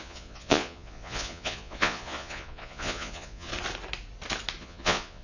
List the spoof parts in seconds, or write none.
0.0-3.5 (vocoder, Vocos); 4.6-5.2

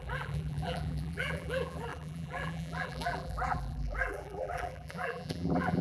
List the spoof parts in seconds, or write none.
0.0-5.8 (vocoder, BigVGAN v2)